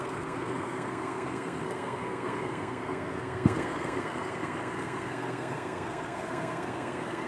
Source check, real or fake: fake